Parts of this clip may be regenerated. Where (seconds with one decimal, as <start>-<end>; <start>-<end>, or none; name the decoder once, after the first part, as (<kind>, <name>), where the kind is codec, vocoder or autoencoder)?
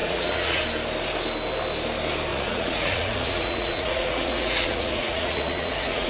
0.0-0.6 (vocoder, Vocos); 2.3-6.1